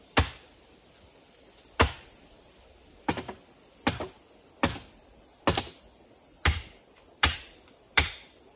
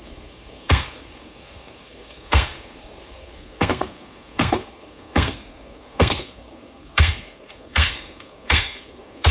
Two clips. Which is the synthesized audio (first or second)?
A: second